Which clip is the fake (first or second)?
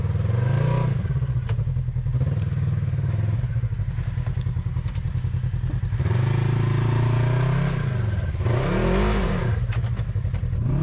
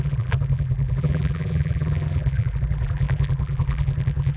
second